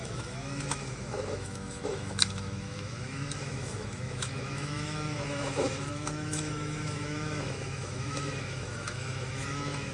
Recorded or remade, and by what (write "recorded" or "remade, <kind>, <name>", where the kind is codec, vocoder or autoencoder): remade, autoencoder, DAC-VAE